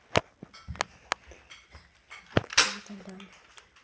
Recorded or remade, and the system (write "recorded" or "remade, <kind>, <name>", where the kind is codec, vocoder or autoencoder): recorded